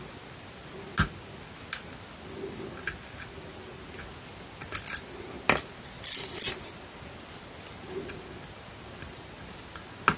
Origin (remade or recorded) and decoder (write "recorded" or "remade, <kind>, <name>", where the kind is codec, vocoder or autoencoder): recorded